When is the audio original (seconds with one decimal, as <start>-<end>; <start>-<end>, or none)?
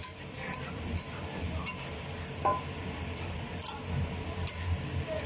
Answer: 1.6-5.3